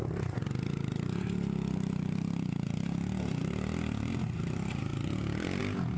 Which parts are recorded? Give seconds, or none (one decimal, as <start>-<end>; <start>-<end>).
0.0-6.0